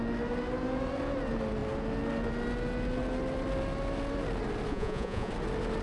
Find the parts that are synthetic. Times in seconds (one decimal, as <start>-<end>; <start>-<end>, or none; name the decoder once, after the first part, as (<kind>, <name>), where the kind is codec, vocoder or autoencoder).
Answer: 4.7-5.3 (vocoder, Vocos)